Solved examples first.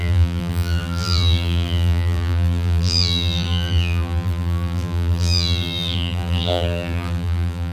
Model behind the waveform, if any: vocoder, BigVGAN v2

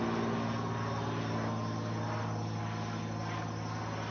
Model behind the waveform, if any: none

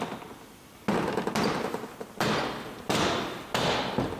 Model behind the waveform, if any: none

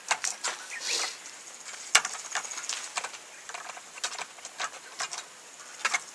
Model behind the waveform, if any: none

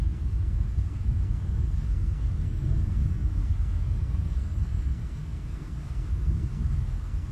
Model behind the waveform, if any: codec, SNAC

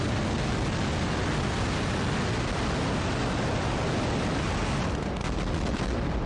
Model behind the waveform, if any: none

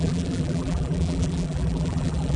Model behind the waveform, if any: vocoder, BigVGAN v2